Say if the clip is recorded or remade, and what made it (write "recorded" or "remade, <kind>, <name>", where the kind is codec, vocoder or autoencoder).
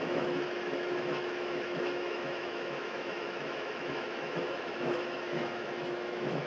remade, autoencoder, DAC-VAE